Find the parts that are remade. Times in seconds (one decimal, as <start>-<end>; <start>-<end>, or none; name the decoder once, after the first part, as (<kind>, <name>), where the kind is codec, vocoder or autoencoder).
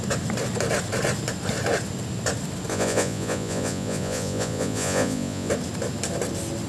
2.7-5.5 (vocoder, Vocos)